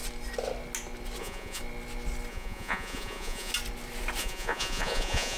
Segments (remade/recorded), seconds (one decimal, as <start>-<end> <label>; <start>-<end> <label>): 0.0-1.2 recorded; 1.2-1.6 remade; 1.6-2.3 recorded; 2.3-3.5 remade; 3.5-4.2 recorded; 4.2-5.4 remade